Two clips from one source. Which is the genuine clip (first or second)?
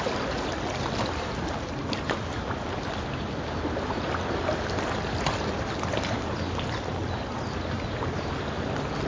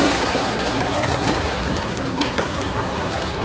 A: first